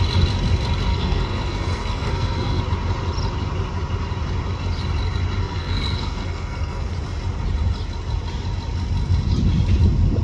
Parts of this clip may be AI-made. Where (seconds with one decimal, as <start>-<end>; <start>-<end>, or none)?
0.9-2.6; 5.4-6.9